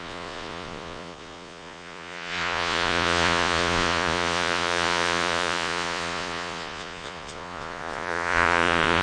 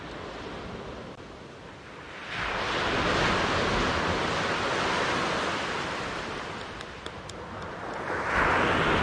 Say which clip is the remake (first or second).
first